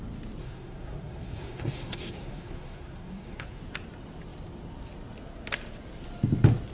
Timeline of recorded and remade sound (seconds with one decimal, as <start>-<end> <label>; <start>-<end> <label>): 0.0-0.4 recorded; 0.4-3.6 remade; 3.6-6.7 recorded